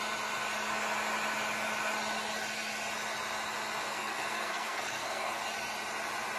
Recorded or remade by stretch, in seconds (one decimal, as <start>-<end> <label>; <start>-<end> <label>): 0.0-3.9 recorded; 3.9-5.4 remade; 5.4-6.4 recorded